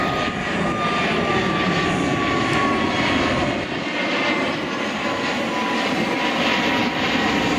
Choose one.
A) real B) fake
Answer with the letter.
A